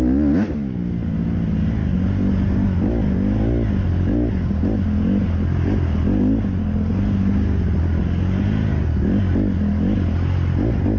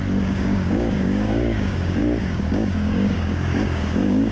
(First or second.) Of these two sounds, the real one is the first